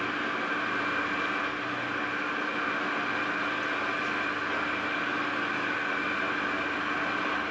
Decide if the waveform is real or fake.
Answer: real